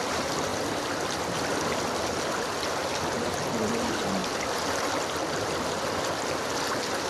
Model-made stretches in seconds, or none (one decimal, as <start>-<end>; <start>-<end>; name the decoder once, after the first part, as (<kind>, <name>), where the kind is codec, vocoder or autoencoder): none